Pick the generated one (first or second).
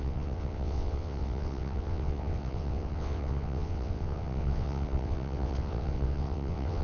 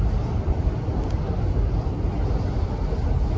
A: first